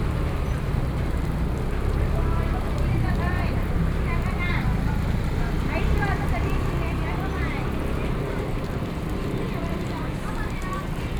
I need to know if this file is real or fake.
fake